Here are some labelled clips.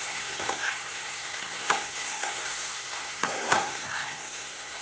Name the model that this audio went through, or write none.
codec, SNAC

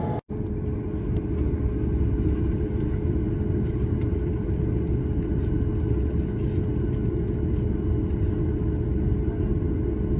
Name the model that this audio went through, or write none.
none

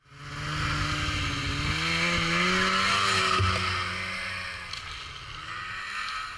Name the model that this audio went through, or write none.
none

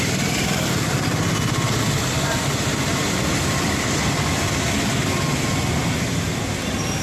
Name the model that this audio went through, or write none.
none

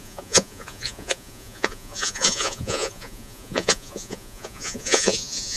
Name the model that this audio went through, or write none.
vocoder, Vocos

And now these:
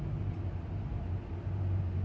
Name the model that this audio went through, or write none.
none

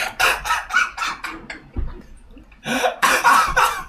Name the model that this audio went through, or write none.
vocoder, BigVGAN v2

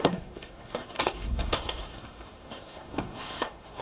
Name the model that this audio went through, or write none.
codec, SNAC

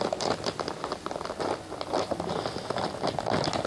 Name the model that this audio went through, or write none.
vocoder, BigVGAN v2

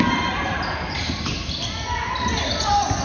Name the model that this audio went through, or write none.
none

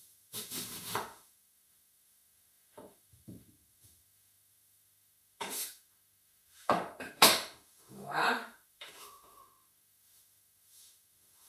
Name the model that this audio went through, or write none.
autoencoder, DAC-VAE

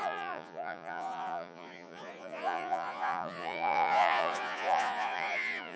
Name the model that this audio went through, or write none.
vocoder, Vocos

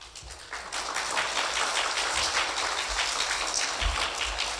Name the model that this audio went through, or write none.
none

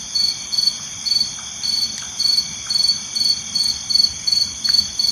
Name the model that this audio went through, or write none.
vocoder, BigVGAN v2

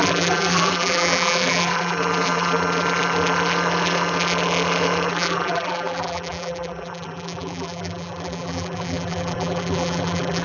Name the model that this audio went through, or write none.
vocoder, BigVGAN v2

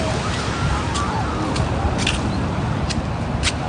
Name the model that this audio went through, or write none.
none